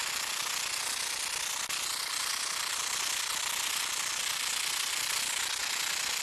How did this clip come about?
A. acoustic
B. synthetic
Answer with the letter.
A